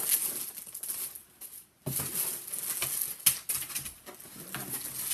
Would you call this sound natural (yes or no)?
yes